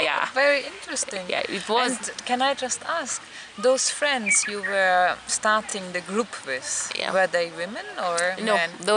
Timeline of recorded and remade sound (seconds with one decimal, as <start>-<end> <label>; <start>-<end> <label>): 0.0-1.4 remade; 1.4-9.0 recorded

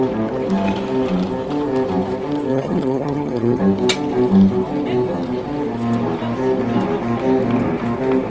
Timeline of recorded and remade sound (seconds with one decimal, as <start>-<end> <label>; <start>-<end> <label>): 0.0-2.5 recorded; 2.5-3.6 remade; 3.6-8.3 recorded